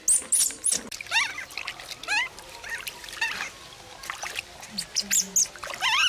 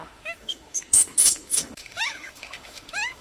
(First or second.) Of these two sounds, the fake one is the second